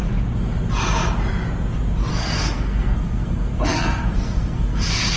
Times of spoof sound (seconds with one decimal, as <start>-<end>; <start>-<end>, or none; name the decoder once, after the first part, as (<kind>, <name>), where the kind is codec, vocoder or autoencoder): 2.1-5.2 (codec, SNAC)